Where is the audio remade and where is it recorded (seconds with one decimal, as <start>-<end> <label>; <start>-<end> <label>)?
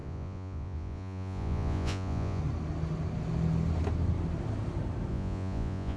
0.0-2.4 remade; 2.4-5.1 recorded; 5.1-6.0 remade